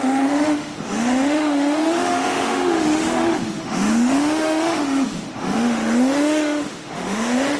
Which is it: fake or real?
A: fake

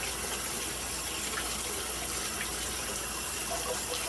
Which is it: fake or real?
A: real